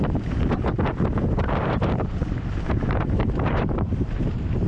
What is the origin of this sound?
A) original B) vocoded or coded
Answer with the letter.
B